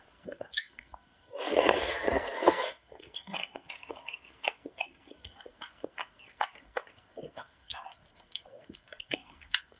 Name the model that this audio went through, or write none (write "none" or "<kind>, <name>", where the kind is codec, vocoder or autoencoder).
codec, SNAC